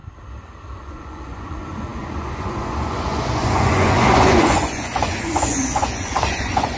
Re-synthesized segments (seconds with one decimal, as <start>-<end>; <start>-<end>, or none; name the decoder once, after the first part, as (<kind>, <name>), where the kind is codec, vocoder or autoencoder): 0.8-6.8 (vocoder, Vocos)